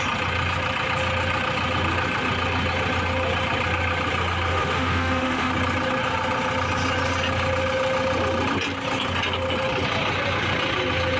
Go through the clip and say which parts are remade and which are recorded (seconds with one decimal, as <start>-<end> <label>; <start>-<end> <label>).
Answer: 0.0-4.5 recorded; 4.5-5.5 remade; 5.5-11.2 recorded